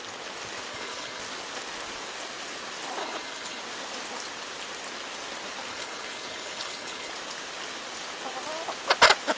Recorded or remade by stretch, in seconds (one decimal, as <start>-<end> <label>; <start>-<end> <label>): 0.0-0.7 recorded; 0.7-1.2 remade; 1.2-3.0 recorded; 3.0-3.6 remade; 3.6-5.7 recorded; 5.7-7.1 remade; 7.1-9.4 recorded